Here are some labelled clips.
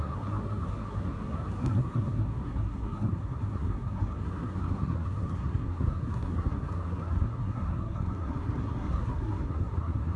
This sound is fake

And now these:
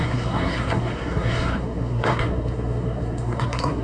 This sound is fake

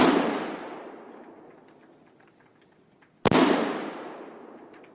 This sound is real